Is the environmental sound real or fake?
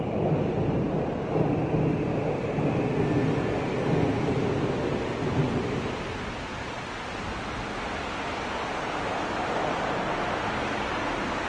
real